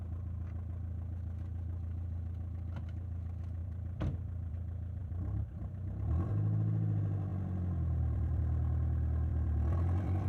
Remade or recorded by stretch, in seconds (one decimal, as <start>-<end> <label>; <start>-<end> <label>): 0.0-3.6 recorded; 3.6-4.5 remade; 4.5-5.0 recorded; 5.0-6.3 remade; 6.3-7.3 recorded; 7.3-8.4 remade; 8.4-9.3 recorded; 9.3-10.3 remade